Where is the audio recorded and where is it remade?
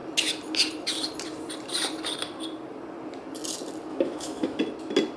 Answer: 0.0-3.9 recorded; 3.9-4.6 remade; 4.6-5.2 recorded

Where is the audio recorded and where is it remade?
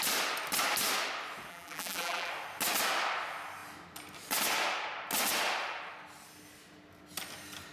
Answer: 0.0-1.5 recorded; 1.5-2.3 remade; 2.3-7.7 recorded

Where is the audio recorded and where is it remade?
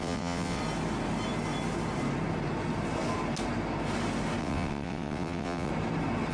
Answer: 0.0-0.6 remade; 0.6-4.4 recorded; 4.4-5.7 remade; 5.7-6.3 recorded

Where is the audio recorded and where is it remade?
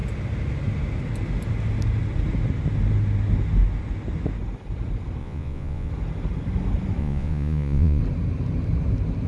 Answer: 0.0-5.2 recorded; 5.2-5.9 remade; 5.9-7.0 recorded; 7.0-8.0 remade; 8.0-9.3 recorded